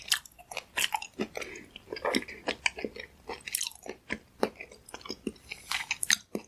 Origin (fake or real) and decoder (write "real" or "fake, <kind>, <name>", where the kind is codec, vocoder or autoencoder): real